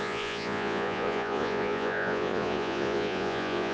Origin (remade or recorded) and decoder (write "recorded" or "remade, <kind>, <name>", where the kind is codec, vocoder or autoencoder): remade, vocoder, Vocos